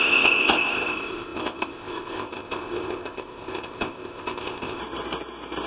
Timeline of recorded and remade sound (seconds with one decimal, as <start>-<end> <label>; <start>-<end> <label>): 0.0-4.8 remade; 4.8-5.7 recorded